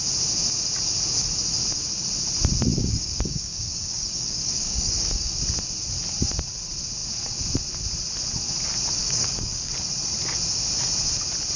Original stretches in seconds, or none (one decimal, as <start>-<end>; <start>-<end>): 0.0-2.7; 5.4-9.0; 9.7-11.6